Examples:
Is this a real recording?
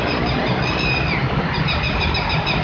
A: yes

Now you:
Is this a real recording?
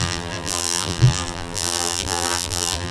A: no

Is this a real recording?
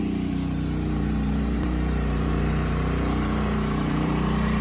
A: no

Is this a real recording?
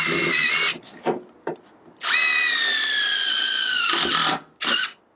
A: yes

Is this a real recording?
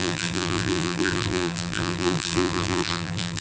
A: no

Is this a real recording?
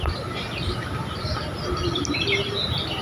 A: yes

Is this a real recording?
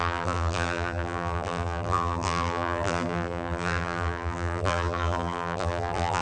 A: no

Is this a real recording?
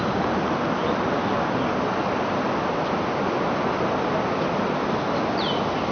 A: yes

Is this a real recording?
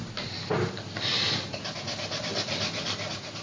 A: yes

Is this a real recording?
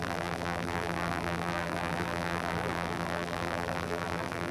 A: no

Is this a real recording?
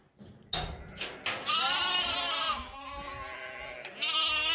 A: yes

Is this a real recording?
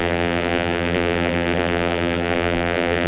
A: no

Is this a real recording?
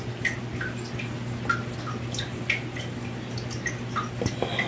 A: yes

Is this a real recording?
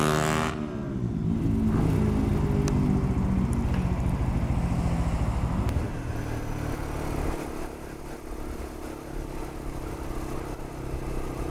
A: yes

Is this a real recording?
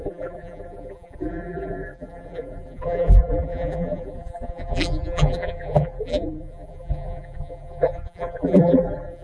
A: no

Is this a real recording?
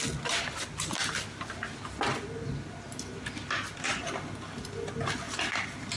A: yes